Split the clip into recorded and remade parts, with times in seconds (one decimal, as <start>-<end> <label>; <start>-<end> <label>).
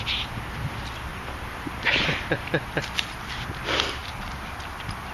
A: 0.0-1.1 recorded; 1.1-3.3 remade; 3.3-4.0 recorded; 4.0-4.5 remade; 4.5-5.1 recorded